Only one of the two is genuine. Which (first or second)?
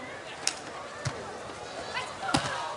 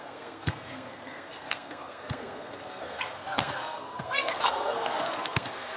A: first